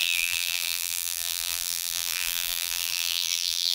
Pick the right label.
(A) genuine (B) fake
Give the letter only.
B